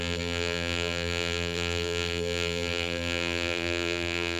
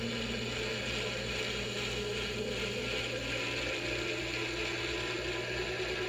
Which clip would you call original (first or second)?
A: second